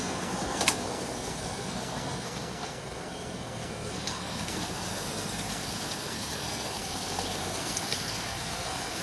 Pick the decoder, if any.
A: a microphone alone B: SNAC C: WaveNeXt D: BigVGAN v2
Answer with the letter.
B